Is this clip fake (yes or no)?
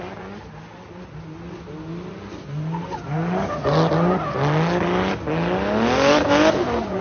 no